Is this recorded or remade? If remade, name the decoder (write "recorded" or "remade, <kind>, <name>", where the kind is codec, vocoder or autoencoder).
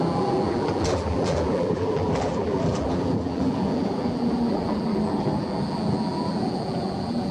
remade, vocoder, BigVGAN v2